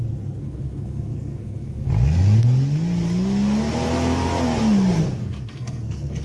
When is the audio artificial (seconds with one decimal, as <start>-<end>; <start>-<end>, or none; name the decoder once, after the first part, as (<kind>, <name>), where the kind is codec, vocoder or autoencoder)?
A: 0.4-1.9 (codec, SNAC); 5.2-6.2